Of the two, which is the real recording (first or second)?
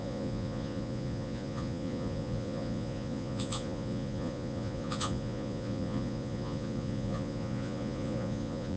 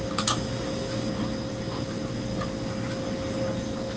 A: second